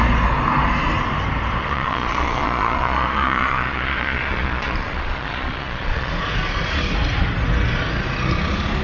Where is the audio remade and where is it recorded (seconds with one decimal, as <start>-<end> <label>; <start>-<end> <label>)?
0.0-1.6 recorded; 1.6-6.1 remade; 6.1-8.8 recorded